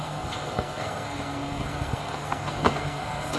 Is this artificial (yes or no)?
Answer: yes